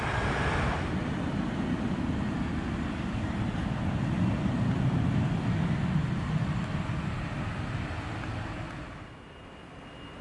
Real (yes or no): yes